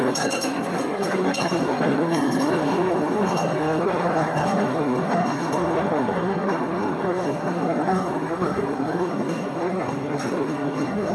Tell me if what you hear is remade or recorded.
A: remade